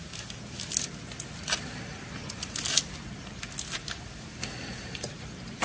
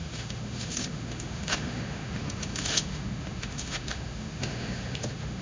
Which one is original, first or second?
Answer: first